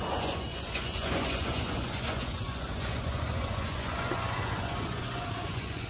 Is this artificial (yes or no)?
yes